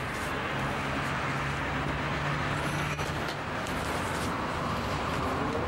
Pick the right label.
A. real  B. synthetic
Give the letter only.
A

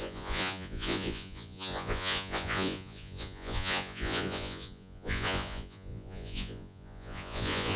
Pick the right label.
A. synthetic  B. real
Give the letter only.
A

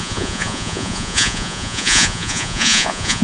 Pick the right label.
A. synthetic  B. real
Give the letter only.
A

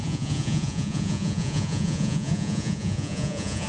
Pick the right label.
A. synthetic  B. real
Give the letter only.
A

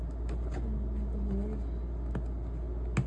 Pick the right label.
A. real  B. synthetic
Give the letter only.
A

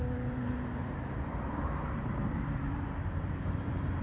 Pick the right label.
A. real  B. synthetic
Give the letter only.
B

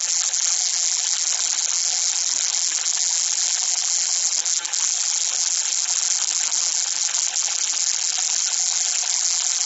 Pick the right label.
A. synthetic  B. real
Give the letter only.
A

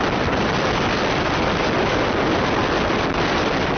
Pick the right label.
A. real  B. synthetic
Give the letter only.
A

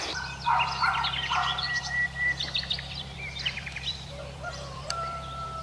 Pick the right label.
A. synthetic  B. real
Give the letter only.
A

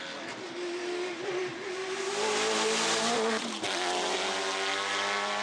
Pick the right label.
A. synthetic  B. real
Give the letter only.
B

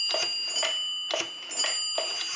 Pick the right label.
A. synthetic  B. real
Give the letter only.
B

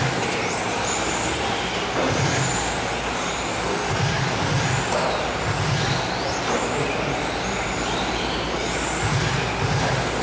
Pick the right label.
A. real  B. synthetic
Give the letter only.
A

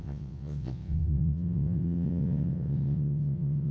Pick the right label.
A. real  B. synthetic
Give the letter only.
B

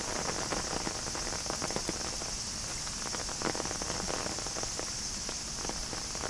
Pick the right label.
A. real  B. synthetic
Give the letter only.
A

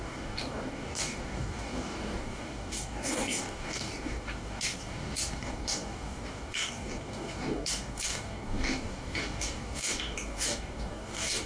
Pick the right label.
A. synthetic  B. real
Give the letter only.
A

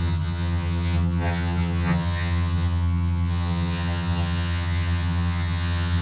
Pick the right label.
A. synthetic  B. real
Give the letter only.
A